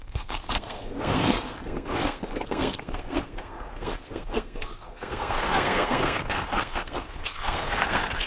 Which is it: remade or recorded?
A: remade